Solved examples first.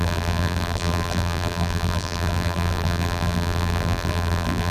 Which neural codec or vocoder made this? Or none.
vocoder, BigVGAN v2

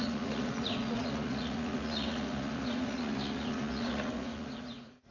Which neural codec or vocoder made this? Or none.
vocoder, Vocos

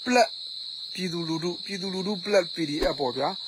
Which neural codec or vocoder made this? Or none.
none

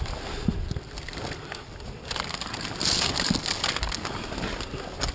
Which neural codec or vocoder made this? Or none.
none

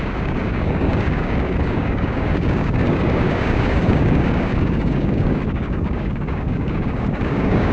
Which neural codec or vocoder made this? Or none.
codec, DAC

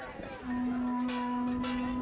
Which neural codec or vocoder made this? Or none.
none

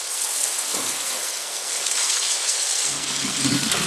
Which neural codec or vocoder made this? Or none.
codec, SNAC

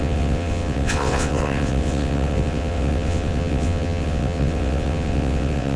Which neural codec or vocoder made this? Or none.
vocoder, WaveNeXt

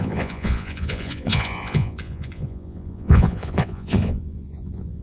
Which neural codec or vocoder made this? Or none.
vocoder, Vocos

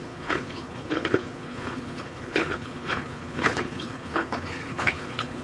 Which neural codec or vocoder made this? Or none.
codec, HILCodec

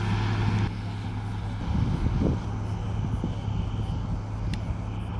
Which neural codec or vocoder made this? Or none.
none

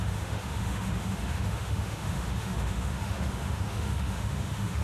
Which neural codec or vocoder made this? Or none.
autoencoder, DAC-VAE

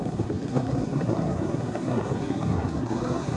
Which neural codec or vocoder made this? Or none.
codec, SNAC